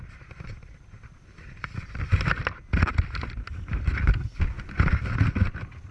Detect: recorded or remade recorded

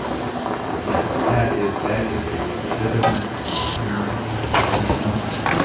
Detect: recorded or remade recorded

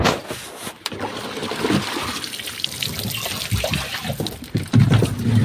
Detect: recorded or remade recorded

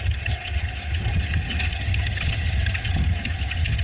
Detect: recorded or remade remade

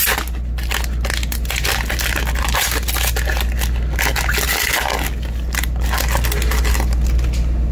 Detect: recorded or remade recorded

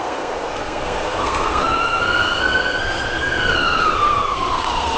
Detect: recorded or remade remade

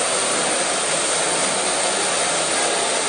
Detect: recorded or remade recorded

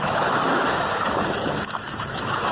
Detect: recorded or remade remade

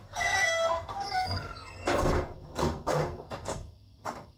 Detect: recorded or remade remade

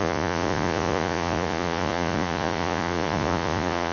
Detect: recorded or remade remade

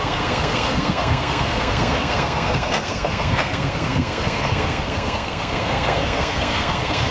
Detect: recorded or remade remade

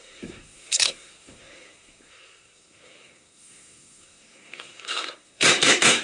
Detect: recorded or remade remade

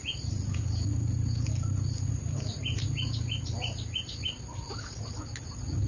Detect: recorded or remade recorded